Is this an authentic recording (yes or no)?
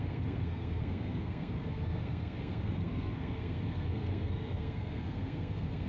no